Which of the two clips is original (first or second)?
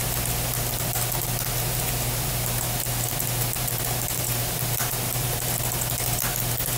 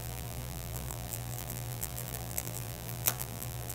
first